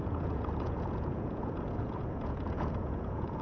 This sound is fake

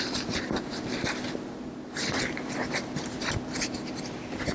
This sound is real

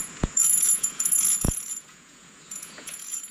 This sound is fake